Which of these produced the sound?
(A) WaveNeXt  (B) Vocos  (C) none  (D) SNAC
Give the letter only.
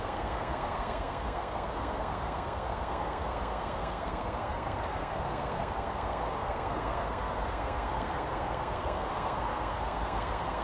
D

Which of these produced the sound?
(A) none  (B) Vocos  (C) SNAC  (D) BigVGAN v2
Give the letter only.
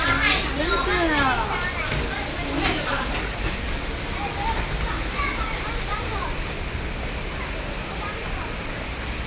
A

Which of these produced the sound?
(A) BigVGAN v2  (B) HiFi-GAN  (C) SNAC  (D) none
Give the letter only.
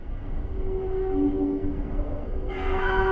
C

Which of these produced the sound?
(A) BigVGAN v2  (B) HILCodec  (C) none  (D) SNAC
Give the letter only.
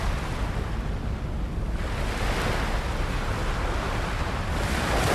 C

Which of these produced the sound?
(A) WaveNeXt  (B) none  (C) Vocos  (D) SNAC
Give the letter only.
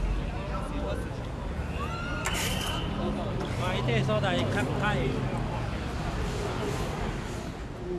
B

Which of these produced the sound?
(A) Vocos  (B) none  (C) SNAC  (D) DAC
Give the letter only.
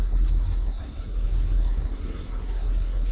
C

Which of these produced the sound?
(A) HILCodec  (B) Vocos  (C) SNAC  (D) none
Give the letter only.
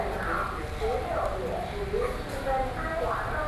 D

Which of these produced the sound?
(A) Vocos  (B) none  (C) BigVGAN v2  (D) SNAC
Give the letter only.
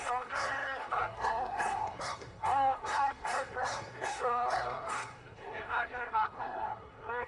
D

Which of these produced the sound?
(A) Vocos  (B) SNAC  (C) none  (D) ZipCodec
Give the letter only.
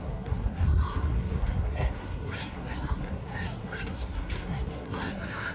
B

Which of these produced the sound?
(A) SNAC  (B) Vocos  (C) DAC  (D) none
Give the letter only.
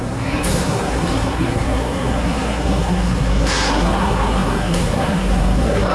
A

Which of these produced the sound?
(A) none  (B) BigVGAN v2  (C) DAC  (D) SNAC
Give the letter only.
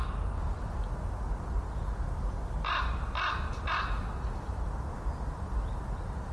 A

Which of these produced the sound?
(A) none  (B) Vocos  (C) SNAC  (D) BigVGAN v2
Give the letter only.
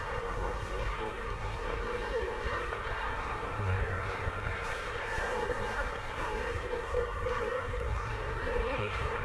C